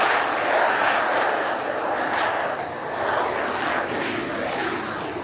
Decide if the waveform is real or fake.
real